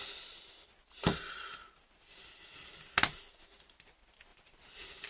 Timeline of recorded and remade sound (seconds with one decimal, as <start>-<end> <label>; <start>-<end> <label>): 0.0-5.1 recorded